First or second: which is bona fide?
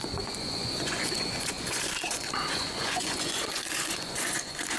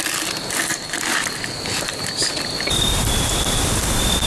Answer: second